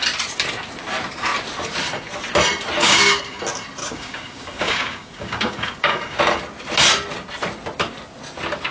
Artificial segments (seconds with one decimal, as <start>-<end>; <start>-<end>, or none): 2.8-3.4; 3.8-6.2